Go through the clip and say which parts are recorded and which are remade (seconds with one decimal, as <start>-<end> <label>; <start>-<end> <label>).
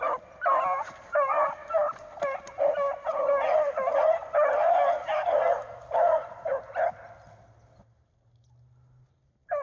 0.0-1.6 recorded; 1.6-2.6 remade; 2.6-9.6 recorded